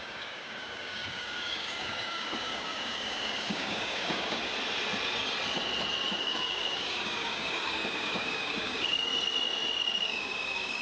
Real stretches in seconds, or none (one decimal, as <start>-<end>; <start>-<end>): 4.4-6.2; 9.1-9.7